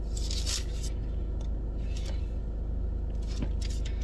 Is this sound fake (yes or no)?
no